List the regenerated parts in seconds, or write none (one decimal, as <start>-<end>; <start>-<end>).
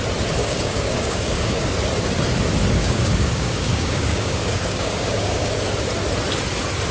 0.4-1.7; 2.8-5.5